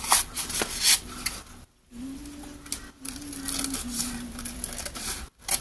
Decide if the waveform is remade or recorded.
recorded